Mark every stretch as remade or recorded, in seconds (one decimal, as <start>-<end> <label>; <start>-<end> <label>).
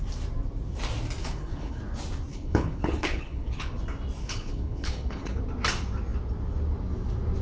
0.0-1.2 recorded; 1.2-1.8 remade; 1.8-2.3 recorded; 2.3-3.7 remade; 3.7-4.2 recorded; 4.2-5.4 remade; 5.4-7.4 recorded